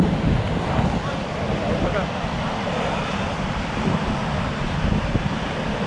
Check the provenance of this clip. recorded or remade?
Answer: recorded